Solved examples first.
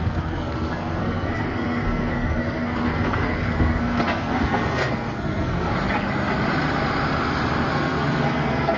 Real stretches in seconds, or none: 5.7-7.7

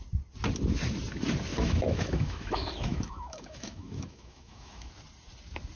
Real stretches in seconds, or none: 0.0-1.5; 4.9-5.8

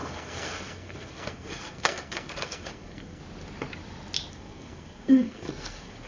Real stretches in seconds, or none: 3.2-4.3

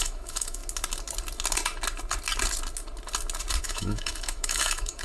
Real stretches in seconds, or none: 0.6-3.6

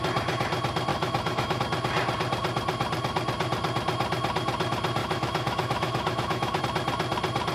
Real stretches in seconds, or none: 0.0-0.9; 1.6-5.0; 6.6-7.5